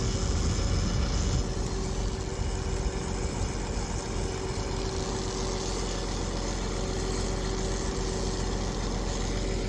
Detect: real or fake real